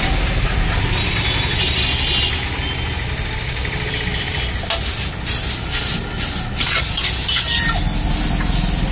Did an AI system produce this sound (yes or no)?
no